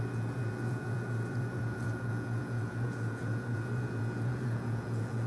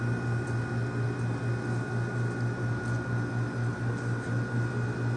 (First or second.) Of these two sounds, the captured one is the second